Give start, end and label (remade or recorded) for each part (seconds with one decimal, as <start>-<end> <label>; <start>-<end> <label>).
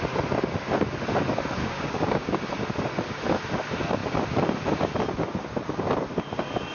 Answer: 0.0-1.6 recorded; 1.6-2.4 remade; 2.4-6.7 recorded